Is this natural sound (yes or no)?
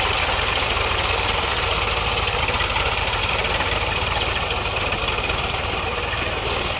no